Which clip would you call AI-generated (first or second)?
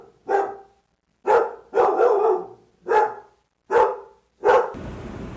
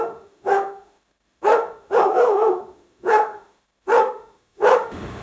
second